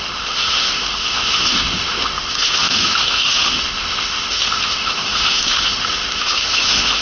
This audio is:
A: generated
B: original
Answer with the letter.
A